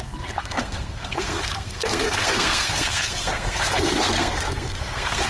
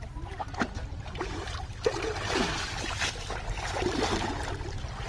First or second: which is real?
second